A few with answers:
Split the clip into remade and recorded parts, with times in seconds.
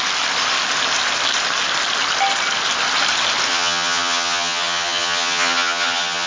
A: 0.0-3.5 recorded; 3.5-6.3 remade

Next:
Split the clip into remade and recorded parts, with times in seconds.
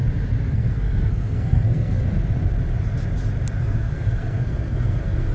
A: 0.0-0.5 recorded; 0.5-2.0 remade; 2.0-3.6 recorded; 3.6-5.3 remade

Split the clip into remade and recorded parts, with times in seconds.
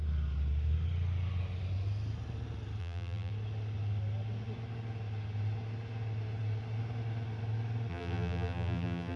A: 0.0-2.8 recorded; 2.8-3.3 remade; 3.3-7.9 recorded; 7.9-9.2 remade